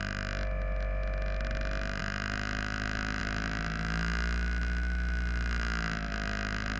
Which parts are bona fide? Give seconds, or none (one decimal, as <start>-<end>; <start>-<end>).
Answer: 0.0-6.8